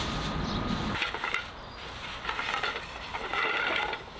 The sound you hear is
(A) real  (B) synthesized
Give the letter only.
A